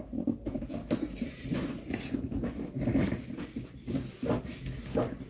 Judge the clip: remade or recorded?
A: recorded